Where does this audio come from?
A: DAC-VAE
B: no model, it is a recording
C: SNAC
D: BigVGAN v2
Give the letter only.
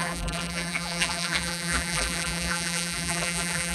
D